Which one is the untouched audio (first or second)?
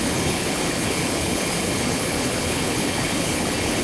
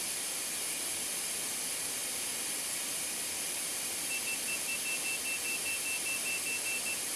second